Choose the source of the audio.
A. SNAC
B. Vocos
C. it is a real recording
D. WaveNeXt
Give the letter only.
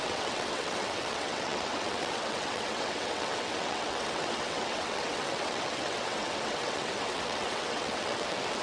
D